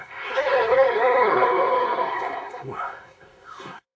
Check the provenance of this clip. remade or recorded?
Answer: remade